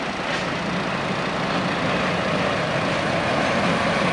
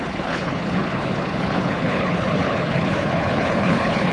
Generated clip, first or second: second